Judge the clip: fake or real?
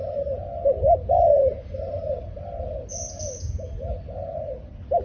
real